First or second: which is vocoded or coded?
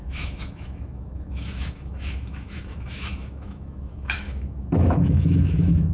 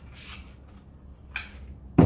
first